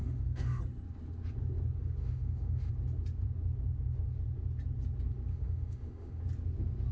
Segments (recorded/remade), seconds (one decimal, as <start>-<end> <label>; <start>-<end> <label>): 0.0-0.6 remade; 0.6-2.0 recorded; 2.0-2.7 remade; 2.7-5.3 recorded; 5.3-6.2 remade; 6.2-6.9 recorded